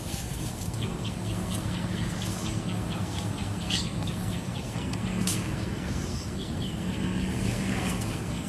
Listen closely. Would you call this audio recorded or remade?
remade